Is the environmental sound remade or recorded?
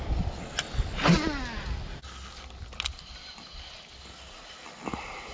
recorded